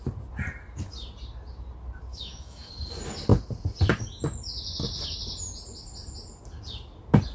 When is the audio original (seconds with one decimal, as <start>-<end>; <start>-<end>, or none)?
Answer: 0.0-2.1; 2.7-7.3